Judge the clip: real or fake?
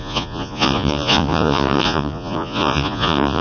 fake